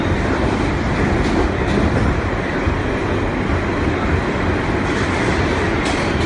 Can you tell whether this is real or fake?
real